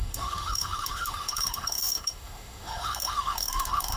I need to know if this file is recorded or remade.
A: remade